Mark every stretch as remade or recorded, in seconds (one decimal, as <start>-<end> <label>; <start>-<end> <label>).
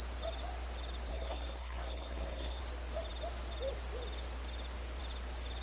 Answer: 0.0-1.1 recorded; 1.1-2.6 remade; 2.6-5.6 recorded